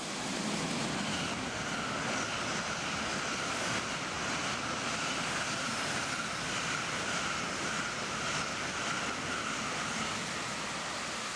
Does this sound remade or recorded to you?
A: recorded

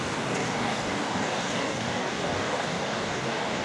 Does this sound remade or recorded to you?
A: remade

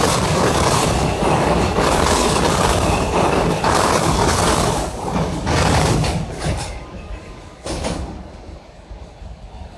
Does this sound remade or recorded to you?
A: remade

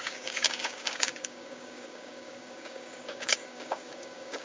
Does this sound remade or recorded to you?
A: remade